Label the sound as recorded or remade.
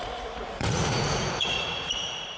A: remade